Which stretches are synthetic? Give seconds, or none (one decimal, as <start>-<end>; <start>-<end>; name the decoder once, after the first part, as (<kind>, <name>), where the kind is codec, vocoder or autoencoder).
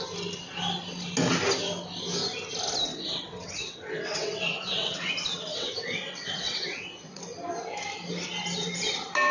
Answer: 2.9-5.1 (vocoder, WaveNeXt); 5.5-7.2